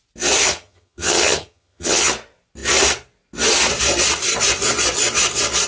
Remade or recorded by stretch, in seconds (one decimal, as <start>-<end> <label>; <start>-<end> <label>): 0.0-0.4 recorded; 0.4-2.1 remade; 2.1-5.7 recorded